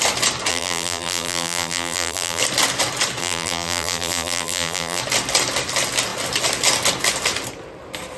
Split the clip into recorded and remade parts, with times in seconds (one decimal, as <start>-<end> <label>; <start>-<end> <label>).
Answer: 0.0-0.5 recorded; 0.5-2.4 remade; 2.4-3.2 recorded; 3.2-5.0 remade; 5.0-8.2 recorded